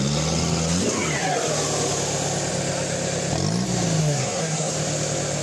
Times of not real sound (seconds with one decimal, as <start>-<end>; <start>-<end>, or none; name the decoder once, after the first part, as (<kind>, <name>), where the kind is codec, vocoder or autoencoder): 4.0-4.7 (codec, SNAC)